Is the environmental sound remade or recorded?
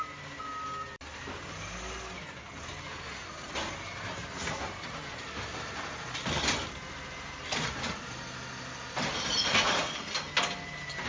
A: recorded